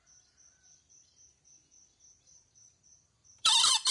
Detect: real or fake fake